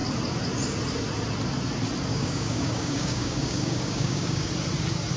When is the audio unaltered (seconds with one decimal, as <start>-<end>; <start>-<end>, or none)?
0.0-2.1; 4.5-5.2

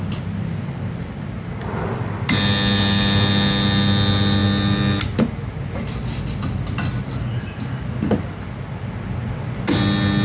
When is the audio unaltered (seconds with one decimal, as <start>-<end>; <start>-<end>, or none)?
0.0-10.2

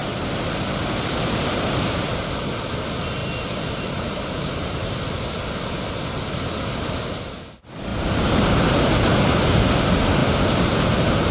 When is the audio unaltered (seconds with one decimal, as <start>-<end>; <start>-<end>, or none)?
2.1-3.2; 5.0-7.9; 9.4-10.2

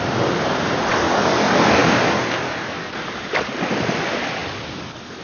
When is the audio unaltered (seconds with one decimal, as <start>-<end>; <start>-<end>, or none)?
0.0-5.2

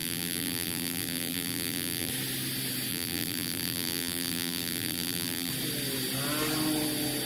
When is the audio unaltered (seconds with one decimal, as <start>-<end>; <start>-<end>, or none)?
2.1-2.9; 5.5-7.3

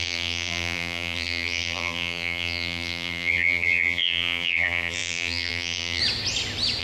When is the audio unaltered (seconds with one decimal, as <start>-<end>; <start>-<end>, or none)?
6.0-6.8